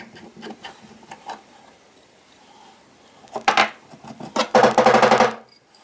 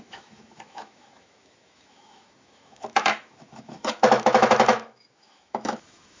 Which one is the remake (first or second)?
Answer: second